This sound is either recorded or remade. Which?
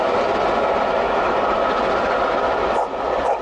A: recorded